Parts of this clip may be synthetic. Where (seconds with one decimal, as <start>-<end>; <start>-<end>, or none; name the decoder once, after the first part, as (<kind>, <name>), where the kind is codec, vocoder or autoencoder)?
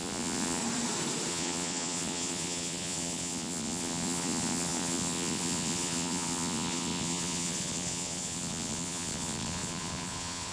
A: 0.0-0.6 (vocoder, Vocos); 1.3-10.5